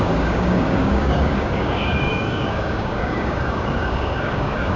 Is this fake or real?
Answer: fake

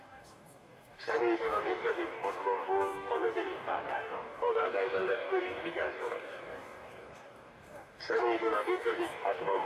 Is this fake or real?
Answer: fake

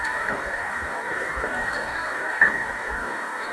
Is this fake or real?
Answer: fake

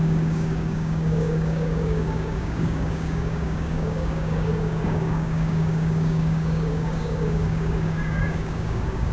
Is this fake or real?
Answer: fake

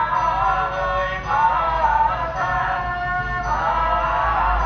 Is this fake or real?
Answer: real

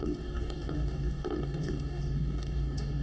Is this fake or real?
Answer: fake